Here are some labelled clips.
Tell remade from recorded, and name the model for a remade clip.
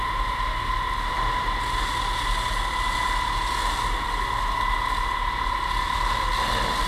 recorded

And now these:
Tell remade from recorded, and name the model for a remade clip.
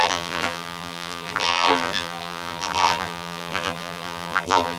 remade, vocoder, BigVGAN v2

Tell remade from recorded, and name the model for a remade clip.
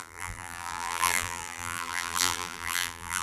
remade, vocoder, BigVGAN v2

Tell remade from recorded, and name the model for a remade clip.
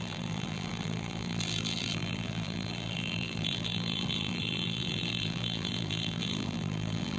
remade, vocoder, BigVGAN v2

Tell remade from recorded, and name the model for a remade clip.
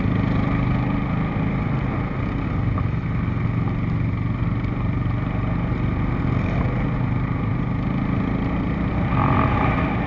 recorded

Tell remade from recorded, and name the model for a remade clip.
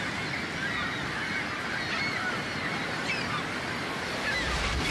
recorded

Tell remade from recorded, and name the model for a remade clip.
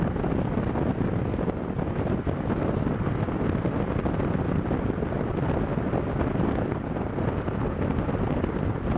recorded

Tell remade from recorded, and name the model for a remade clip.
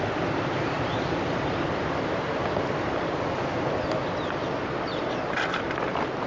recorded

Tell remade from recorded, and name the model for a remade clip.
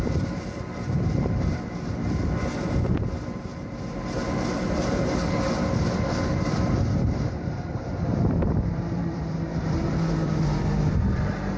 remade, vocoder, BigVGAN v2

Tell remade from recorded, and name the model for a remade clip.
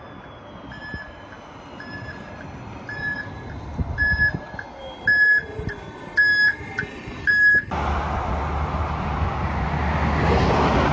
recorded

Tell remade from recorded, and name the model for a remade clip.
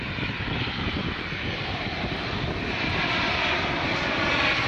recorded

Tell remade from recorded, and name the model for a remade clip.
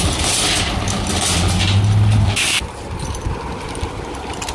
recorded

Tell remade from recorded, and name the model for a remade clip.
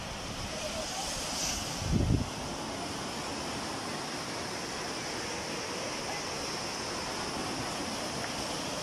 recorded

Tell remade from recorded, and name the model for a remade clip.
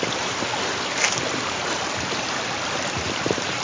remade, vocoder, BigVGAN v2